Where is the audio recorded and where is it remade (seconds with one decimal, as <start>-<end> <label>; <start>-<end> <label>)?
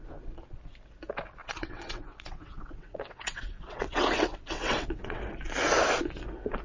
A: 0.0-1.4 recorded; 1.4-5.2 remade; 5.2-6.6 recorded